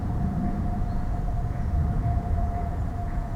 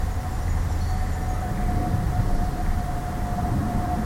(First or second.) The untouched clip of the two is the second